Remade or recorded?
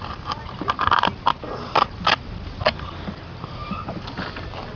recorded